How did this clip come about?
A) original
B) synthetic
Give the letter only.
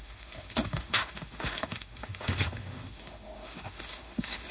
B